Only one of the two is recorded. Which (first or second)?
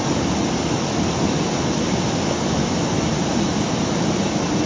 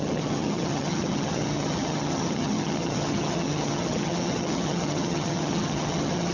first